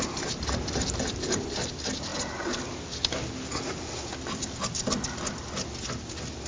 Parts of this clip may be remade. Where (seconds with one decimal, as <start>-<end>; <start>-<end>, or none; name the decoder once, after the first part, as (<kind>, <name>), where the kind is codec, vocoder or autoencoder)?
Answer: none